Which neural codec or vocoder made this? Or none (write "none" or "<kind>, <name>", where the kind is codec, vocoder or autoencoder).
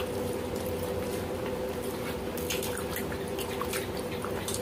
vocoder, BigVGAN v2